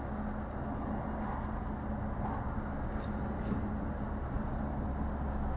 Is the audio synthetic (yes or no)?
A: no